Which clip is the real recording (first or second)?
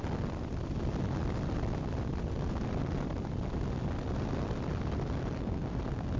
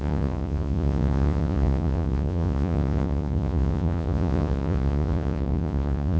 first